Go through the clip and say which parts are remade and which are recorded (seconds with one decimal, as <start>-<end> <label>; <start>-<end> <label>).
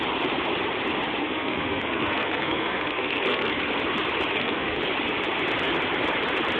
0.0-1.2 recorded; 1.2-3.6 remade; 3.6-4.3 recorded; 4.3-4.8 remade; 4.8-6.6 recorded